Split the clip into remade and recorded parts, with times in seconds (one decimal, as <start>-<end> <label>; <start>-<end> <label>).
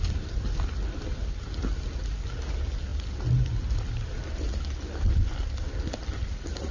0.0-6.7 recorded